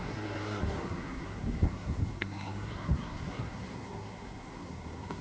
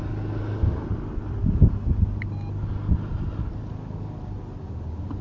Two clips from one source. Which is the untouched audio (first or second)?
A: second